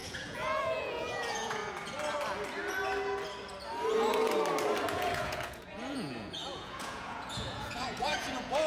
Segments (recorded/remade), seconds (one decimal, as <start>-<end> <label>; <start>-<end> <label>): 0.0-1.6 remade; 1.6-4.9 recorded; 4.9-8.7 remade